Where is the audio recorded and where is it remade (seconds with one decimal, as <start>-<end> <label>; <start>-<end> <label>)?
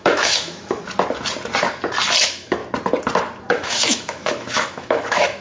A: 0.0-0.8 remade; 0.8-2.2 recorded; 2.2-2.6 remade; 2.6-3.5 recorded; 3.5-5.4 remade